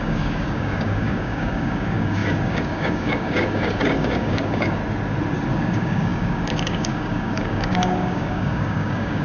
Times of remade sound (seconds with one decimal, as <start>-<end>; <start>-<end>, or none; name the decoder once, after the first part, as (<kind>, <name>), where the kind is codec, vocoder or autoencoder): 0.0-4.8 (codec, DAC); 5.5-9.2